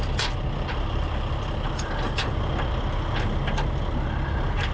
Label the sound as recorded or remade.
recorded